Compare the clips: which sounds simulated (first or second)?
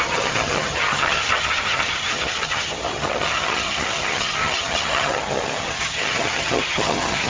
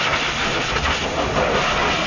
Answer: first